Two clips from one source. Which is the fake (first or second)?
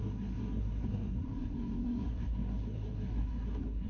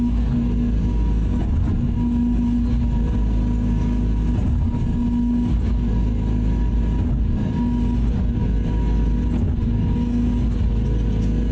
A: first